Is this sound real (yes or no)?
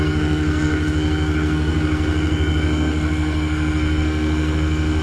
no